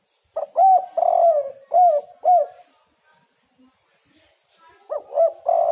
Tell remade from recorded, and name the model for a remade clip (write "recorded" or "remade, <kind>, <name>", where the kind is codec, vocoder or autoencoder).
recorded